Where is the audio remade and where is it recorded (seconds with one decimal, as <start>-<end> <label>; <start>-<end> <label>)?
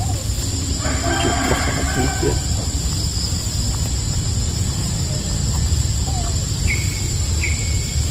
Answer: 0.0-3.1 remade; 3.1-6.4 recorded; 6.4-8.1 remade